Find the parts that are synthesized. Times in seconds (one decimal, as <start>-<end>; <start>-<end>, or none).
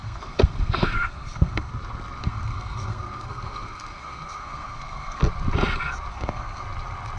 0.0-1.7; 2.2-5.2; 6.1-6.6